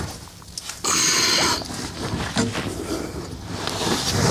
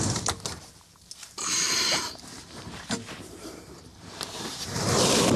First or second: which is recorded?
first